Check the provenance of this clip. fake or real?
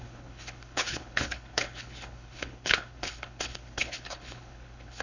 fake